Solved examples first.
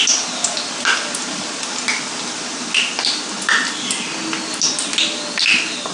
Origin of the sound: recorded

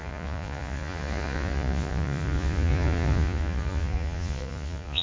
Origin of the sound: remade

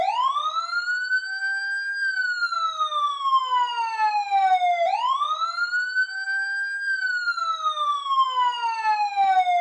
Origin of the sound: recorded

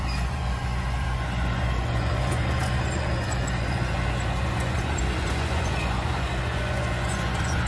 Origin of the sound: remade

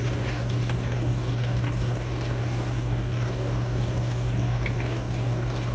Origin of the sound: remade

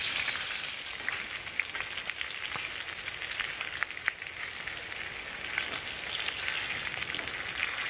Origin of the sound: recorded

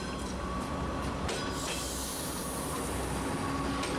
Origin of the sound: recorded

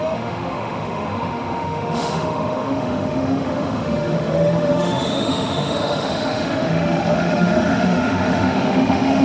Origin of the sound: remade